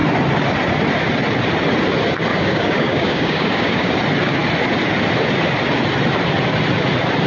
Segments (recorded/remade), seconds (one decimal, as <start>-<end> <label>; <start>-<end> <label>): 0.0-2.3 recorded; 2.3-3.9 remade; 3.9-7.3 recorded